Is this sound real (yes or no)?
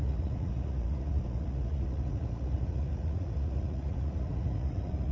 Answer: no